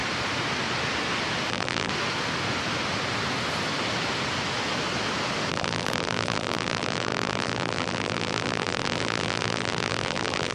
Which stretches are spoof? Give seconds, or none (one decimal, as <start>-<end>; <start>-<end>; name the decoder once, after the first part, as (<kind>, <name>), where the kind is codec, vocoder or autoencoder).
1.5-1.9 (vocoder, BigVGAN v2); 5.5-10.5